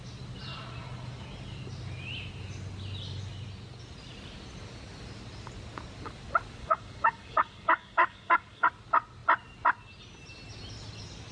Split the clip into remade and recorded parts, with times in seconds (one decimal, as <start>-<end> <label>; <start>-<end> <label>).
0.0-6.6 recorded; 6.6-8.7 remade; 8.7-11.3 recorded